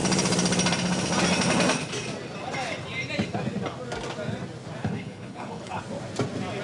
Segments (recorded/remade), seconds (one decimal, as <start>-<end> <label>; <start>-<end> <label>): 0.0-4.8 recorded; 4.8-5.8 remade; 5.8-6.6 recorded